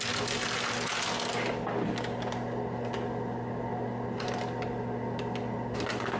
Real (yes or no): yes